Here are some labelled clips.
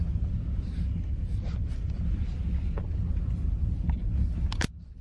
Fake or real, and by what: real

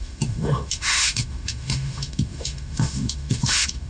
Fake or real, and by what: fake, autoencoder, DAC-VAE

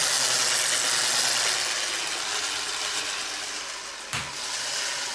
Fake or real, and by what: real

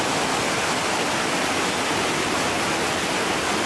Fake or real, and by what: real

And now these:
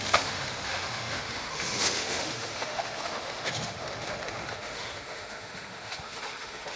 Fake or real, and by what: fake, autoencoder, DAC-VAE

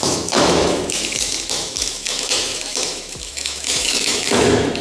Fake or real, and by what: fake, autoencoder, DAC-VAE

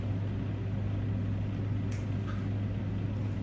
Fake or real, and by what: real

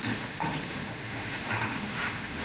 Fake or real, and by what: fake, autoencoder, DAC-VAE